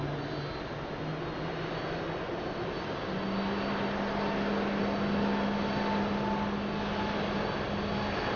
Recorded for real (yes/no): yes